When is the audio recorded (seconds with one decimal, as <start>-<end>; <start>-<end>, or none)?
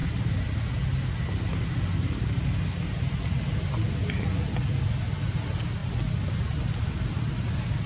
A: 0.0-7.9